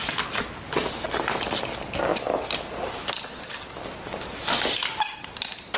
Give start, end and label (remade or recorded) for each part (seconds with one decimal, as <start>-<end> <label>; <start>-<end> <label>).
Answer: 0.0-5.8 recorded

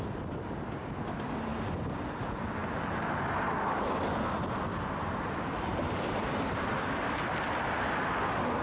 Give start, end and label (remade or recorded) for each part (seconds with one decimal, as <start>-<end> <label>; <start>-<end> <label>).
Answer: 0.0-8.6 recorded

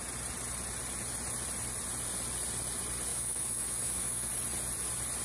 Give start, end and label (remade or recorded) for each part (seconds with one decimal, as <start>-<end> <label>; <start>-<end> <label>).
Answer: 0.0-3.1 recorded; 3.1-4.3 remade; 4.3-5.2 recorded